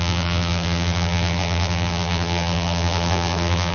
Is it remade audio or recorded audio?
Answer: remade